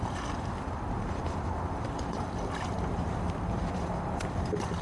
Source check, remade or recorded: remade